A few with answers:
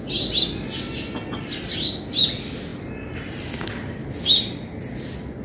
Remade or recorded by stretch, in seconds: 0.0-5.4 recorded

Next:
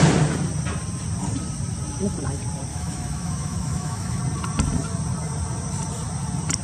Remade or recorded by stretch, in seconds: 0.0-2.7 recorded; 2.7-4.2 remade; 4.2-6.6 recorded